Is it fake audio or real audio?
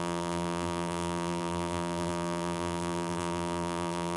fake